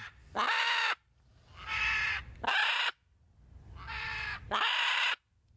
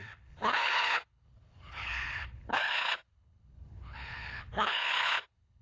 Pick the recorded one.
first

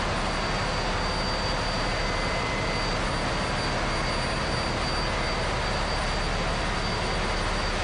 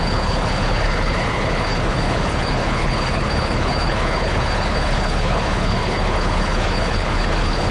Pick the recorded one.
first